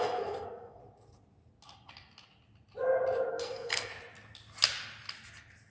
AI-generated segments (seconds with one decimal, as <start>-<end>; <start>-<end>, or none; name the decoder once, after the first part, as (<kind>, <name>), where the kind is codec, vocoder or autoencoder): 0.0-0.8 (codec, SNAC); 3.3-3.9